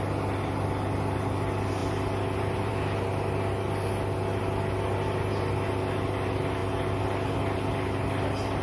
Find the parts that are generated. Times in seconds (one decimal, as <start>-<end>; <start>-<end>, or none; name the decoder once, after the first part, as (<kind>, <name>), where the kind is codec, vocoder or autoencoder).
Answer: none